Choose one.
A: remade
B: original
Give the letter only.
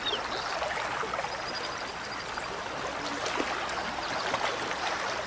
B